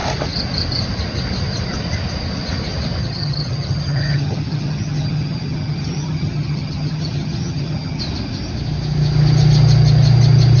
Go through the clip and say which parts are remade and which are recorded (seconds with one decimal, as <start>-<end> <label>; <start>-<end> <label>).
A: 0.0-3.0 recorded; 3.0-8.0 remade; 8.0-10.6 recorded